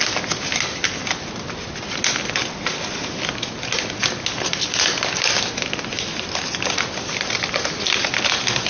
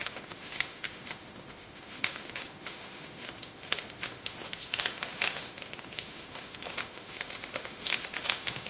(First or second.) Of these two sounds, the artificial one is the second